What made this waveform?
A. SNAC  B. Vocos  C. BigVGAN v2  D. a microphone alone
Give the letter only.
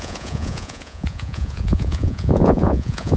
B